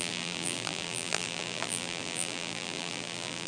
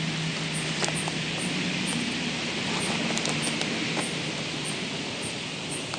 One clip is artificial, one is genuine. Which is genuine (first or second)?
second